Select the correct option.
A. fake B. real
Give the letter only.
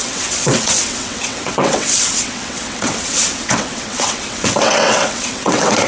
A